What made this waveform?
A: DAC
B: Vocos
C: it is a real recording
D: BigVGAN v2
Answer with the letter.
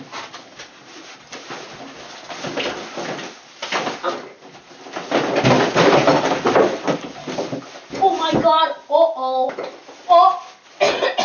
C